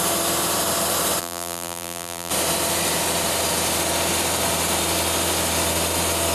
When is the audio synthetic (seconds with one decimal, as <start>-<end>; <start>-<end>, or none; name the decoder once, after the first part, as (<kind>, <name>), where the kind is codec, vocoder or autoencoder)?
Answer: 1.2-2.3 (vocoder, BigVGAN v2)